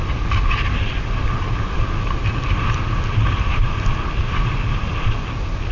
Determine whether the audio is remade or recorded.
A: recorded